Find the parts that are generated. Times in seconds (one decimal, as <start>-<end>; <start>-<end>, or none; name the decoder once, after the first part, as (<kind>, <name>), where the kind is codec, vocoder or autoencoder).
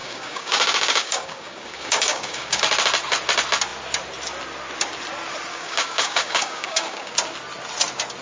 0.0-2.6 (codec, DAC); 5.5-7.1